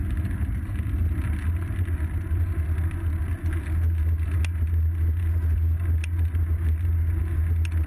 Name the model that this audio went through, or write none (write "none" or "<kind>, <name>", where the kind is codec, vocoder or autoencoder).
none